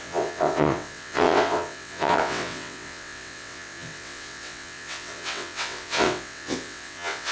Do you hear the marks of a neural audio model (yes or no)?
yes